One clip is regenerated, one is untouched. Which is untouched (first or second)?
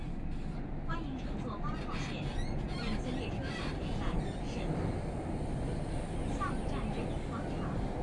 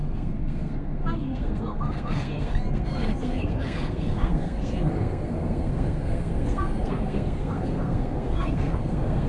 first